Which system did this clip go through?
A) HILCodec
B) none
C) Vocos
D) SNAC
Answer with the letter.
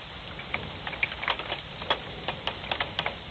B